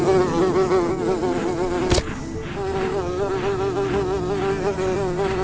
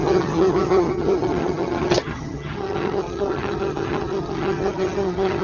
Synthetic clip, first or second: second